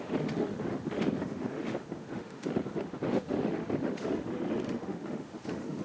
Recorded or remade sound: remade